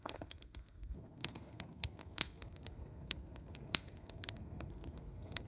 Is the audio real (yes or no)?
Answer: no